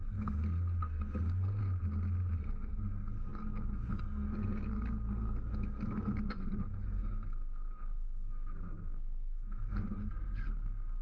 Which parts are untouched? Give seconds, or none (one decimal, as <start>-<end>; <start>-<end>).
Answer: 1.6-2.4